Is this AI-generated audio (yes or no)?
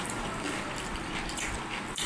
no